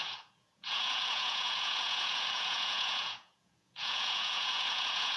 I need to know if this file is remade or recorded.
remade